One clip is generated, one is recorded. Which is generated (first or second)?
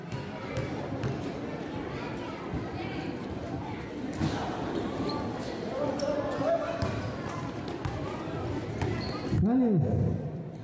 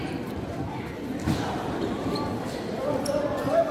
second